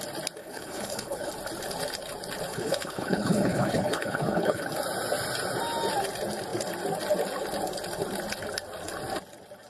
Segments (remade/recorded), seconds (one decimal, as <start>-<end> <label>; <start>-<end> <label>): 0.0-0.4 recorded; 0.4-1.3 remade; 1.3-2.5 recorded; 2.5-4.6 remade; 4.6-9.7 recorded